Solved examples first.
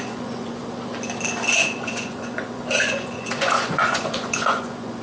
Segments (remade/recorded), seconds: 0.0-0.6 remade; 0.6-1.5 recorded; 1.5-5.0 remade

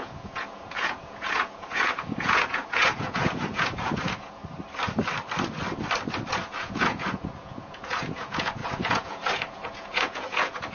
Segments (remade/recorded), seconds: 0.0-4.4 remade; 4.4-6.3 recorded; 6.3-10.7 remade

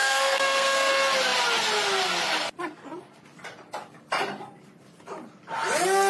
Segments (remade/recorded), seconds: 0.0-0.9 remade; 0.9-6.1 recorded

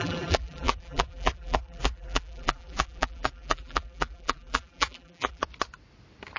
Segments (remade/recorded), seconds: 0.0-5.4 remade; 5.4-6.4 recorded

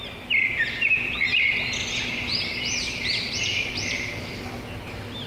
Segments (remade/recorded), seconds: 0.0-1.3 recorded; 1.3-3.7 remade; 3.7-5.3 recorded

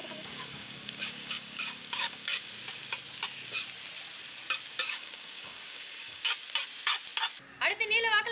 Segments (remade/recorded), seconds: 0.0-2.5 remade; 2.5-4.8 recorded; 4.8-6.4 remade; 6.4-8.3 recorded

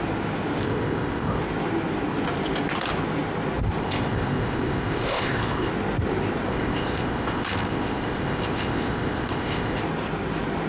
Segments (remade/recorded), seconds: 0.0-0.6 recorded; 0.6-1.4 remade; 1.4-3.8 recorded; 3.8-5.7 remade; 5.7-6.5 recorded; 6.5-9.8 remade; 9.8-10.7 recorded

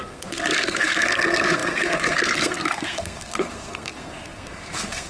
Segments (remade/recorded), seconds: 0.0-5.1 remade